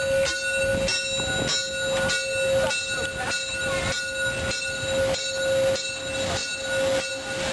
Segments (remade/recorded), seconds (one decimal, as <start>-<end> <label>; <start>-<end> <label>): 0.0-7.5 recorded